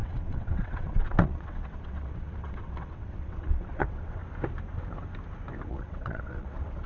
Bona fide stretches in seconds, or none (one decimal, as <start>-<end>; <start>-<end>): 4.2-5.7